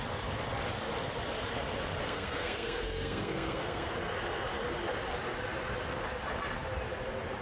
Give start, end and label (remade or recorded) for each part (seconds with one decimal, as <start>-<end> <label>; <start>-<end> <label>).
0.0-2.0 recorded; 2.0-3.9 remade; 3.9-7.4 recorded